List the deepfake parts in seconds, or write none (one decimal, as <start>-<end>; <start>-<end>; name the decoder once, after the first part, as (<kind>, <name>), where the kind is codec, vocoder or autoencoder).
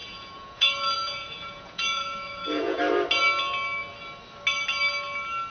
0.0-2.8 (vocoder, Vocos)